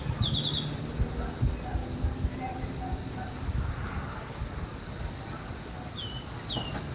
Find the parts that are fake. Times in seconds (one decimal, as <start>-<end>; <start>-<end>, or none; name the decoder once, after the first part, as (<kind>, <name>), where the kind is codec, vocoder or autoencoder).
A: none